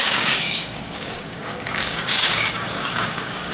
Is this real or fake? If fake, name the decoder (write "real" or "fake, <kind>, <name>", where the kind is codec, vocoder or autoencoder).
fake, codec, DAC